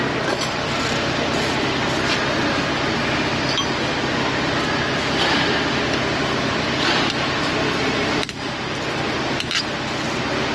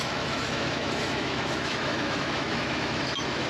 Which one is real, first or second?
first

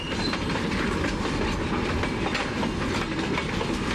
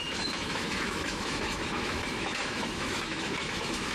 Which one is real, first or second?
first